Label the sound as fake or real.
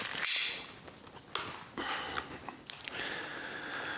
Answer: real